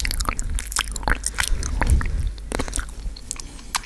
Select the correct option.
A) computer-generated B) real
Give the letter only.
B